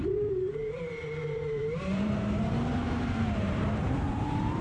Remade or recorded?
remade